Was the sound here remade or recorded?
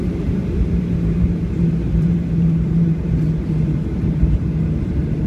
remade